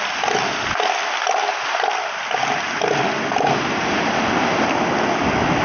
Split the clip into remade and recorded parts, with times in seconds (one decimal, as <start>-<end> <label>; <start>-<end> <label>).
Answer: 0.0-5.6 recorded